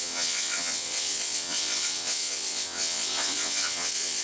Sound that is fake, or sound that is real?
fake